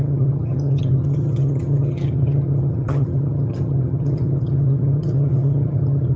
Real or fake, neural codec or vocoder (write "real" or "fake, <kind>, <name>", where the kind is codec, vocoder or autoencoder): fake, vocoder, HiFi-GAN